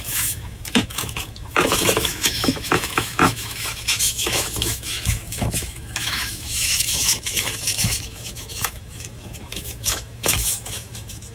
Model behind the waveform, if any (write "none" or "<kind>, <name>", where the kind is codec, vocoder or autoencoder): autoencoder, DAC-VAE